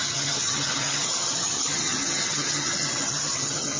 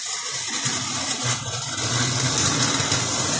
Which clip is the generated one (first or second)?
first